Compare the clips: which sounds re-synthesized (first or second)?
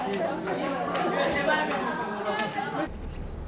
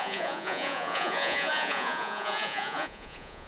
second